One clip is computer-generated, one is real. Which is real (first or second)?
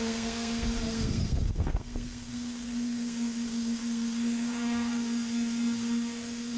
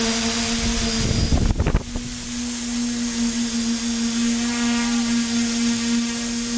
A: second